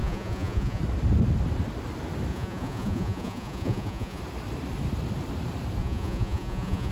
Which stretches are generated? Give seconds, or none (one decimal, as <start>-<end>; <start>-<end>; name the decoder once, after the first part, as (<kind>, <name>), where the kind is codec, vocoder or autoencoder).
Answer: 0.0-0.8 (vocoder, Vocos); 2.3-4.2; 5.8-6.9